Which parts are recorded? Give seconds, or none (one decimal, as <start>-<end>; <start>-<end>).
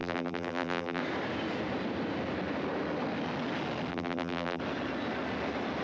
1.0-3.9; 4.6-5.8